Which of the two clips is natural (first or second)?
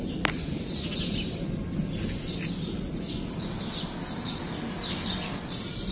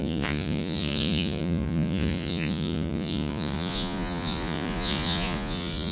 first